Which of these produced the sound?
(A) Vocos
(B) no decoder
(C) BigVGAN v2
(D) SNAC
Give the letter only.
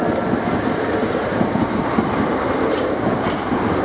B